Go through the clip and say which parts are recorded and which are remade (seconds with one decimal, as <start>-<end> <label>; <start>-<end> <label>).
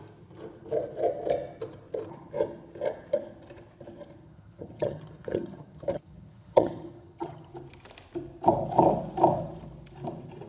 0.0-4.2 recorded; 4.2-7.5 remade; 7.5-10.5 recorded